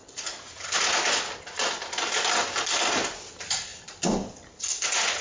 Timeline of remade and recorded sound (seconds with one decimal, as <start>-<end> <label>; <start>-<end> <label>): 0.0-5.2 recorded